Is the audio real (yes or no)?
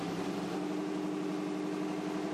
yes